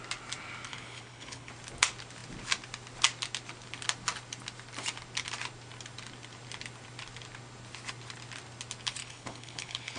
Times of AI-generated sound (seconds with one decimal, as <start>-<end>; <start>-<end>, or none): 0.7-1.5; 9.0-10.0